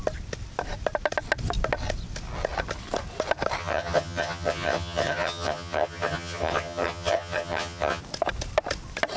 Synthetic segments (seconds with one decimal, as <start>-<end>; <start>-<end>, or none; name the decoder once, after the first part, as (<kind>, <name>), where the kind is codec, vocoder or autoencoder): 3.6-8.0 (vocoder, HiFi-GAN)